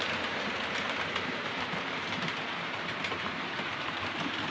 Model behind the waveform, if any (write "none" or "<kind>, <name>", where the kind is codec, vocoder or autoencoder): vocoder, BigVGAN v2